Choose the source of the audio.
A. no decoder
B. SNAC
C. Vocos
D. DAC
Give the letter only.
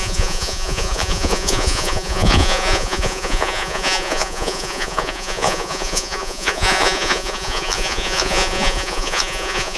C